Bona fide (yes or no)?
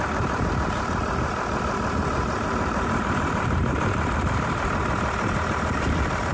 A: no